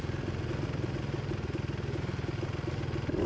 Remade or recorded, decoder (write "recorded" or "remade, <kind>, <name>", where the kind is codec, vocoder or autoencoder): recorded